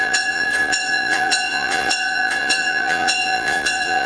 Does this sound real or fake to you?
fake